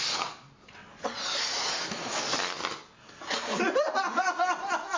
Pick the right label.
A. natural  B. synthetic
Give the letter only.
A